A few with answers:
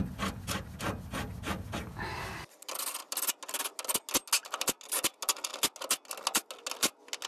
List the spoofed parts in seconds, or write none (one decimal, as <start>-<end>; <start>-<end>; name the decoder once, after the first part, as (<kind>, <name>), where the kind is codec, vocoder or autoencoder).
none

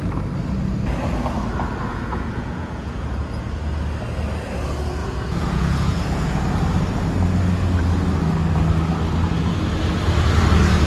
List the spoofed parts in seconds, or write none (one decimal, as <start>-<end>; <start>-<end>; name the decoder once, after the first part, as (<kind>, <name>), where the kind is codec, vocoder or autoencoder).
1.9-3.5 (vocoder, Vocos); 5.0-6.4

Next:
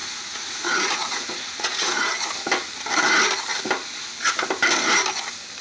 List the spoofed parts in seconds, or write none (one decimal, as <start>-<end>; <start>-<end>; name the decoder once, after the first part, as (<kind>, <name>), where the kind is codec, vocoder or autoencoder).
0.0-2.1 (vocoder, Vocos)

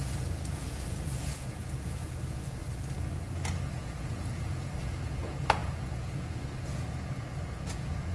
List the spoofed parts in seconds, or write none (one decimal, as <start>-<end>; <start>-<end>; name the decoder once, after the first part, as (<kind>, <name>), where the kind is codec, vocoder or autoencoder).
0.0-2.6 (vocoder, Vocos); 3.8-8.1